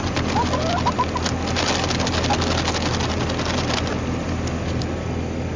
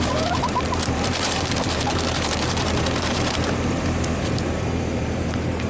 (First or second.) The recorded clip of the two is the first